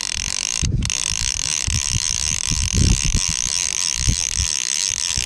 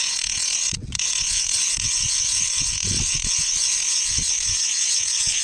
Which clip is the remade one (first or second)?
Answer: second